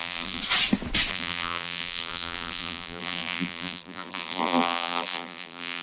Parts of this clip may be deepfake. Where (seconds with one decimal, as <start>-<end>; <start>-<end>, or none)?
0.0-0.4; 1.1-5.8